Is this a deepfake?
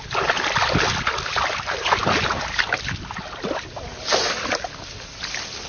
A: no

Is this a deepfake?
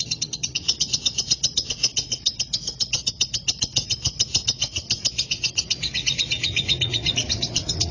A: yes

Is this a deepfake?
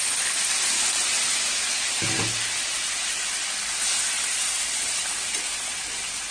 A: no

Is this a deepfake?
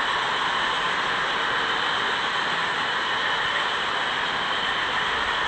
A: no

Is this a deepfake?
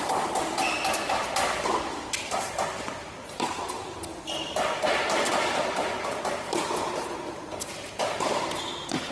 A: no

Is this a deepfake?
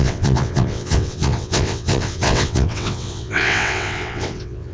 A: yes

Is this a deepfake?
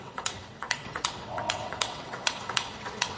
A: yes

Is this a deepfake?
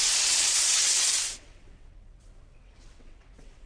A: yes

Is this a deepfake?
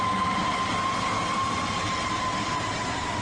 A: no